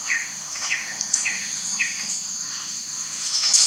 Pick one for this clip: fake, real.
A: fake